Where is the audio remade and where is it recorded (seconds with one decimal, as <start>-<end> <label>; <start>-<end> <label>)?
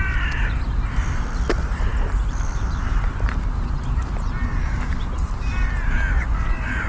0.0-6.9 recorded